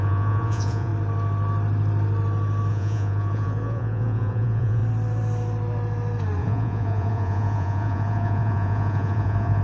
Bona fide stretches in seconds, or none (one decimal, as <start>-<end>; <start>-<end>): 0.9-2.7; 4.8-6.4